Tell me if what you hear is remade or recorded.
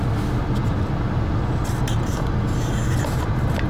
recorded